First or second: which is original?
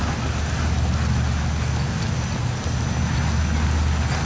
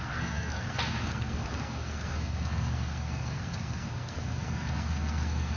first